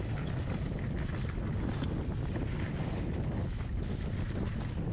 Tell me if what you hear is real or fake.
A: real